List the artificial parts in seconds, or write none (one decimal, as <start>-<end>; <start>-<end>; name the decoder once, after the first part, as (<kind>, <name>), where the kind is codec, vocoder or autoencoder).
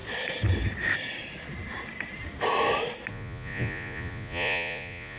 3.1-5.2 (vocoder, Vocos)